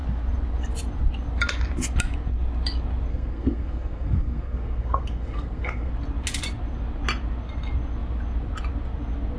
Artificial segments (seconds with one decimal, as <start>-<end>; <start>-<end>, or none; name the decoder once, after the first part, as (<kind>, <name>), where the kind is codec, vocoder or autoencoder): 3.1-5.9 (codec, SNAC)